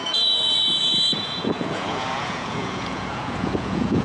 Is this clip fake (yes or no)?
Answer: yes